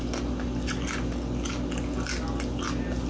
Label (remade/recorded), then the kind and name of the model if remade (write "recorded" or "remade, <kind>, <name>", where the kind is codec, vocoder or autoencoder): recorded